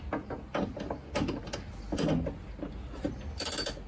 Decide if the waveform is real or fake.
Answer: real